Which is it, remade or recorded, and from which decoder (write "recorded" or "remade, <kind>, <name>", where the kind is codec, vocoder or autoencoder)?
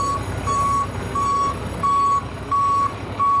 remade, codec, DAC